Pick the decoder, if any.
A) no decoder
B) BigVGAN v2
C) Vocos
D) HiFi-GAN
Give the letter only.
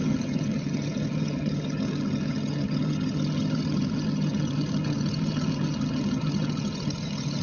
D